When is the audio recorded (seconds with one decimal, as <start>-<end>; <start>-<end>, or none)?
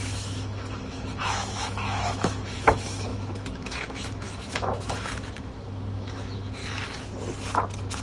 6.6-8.0